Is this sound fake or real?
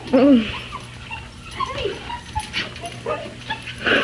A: real